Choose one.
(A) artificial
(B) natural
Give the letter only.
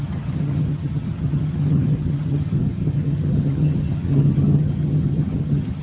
A